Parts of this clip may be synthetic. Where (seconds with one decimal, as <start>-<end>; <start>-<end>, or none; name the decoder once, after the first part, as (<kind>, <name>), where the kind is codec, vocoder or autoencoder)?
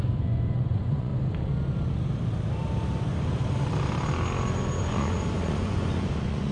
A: 0.0-1.1 (vocoder, Vocos); 4.8-6.5